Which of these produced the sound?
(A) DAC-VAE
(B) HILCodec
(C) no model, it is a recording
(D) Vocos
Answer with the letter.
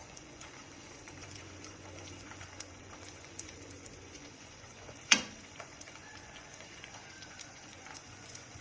D